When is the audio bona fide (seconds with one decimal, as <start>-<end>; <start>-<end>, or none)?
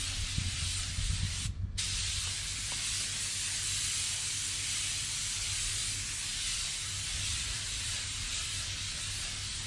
0.0-7.3; 7.9-9.7